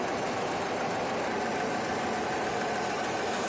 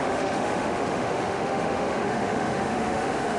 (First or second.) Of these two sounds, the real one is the first